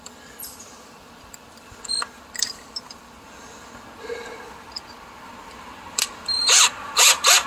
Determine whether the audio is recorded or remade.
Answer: remade